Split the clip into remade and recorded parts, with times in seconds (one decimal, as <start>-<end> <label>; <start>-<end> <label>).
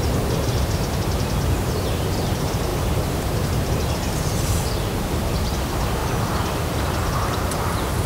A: 0.0-8.1 remade